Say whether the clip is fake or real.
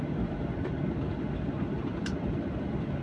fake